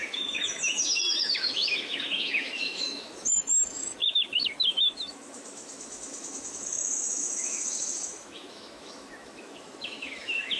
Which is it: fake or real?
fake